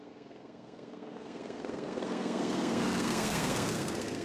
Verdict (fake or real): fake